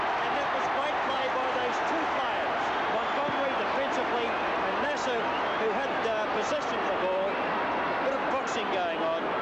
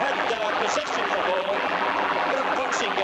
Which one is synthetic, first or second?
second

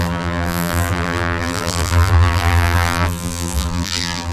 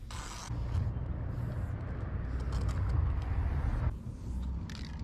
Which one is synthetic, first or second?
first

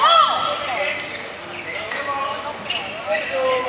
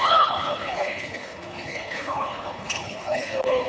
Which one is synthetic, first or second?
second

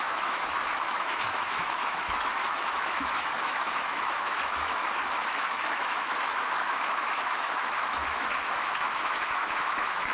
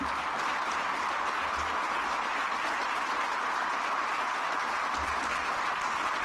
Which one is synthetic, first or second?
first